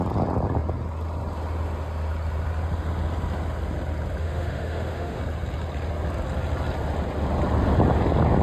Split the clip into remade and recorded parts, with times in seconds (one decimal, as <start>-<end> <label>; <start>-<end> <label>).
0.0-4.2 recorded; 4.2-5.2 remade; 5.2-8.4 recorded